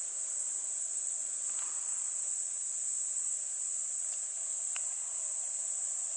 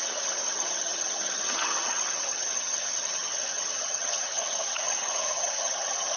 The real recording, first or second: first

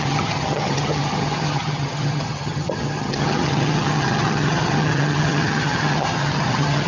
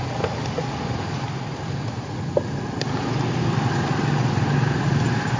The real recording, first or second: second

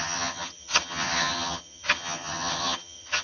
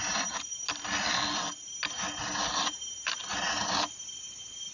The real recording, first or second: second